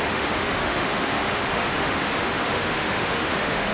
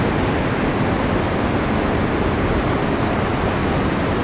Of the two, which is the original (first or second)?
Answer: second